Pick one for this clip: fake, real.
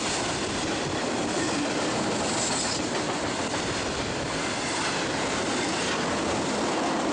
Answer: fake